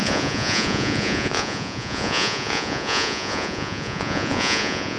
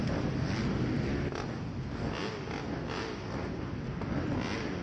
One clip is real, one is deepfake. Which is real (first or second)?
second